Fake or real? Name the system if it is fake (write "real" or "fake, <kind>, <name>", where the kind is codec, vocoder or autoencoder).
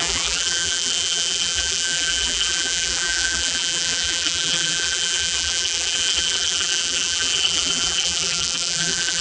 fake, vocoder, BigVGAN v2